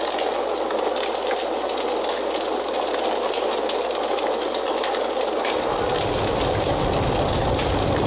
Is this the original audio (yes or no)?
yes